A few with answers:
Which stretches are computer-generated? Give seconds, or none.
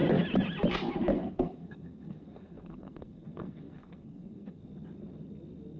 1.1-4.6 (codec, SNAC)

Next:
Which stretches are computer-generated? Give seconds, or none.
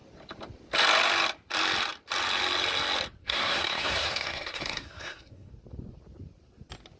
3.2-5.5 (codec, SNAC)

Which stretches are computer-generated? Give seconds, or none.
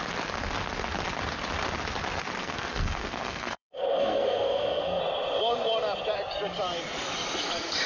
2.4-5.0 (codec, SNAC)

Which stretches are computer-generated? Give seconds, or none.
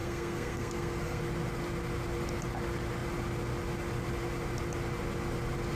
0.0-1.2 (codec, SNAC)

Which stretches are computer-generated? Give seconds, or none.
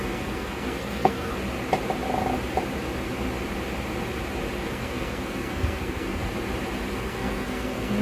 0.0-1.3 (codec, SNAC); 4.7-6.2; 6.9-8.0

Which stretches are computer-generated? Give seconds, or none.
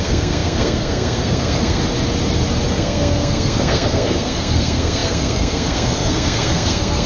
0.0-1.8 (codec, SNAC); 2.7-7.1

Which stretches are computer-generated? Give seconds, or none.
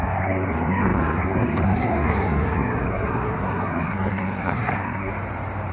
0.0-5.1 (codec, SNAC)